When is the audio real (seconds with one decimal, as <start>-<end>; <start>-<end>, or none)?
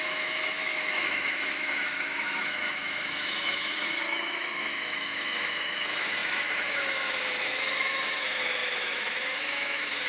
none